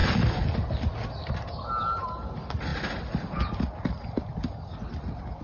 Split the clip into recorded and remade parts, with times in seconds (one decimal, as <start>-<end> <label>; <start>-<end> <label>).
0.0-5.4 recorded